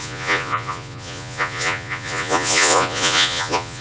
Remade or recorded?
remade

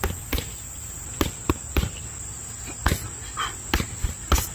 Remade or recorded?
recorded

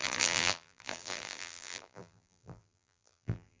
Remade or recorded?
remade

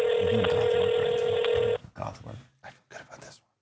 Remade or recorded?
recorded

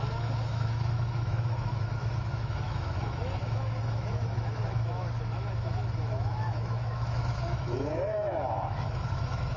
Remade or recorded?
remade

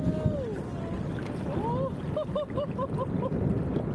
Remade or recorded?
recorded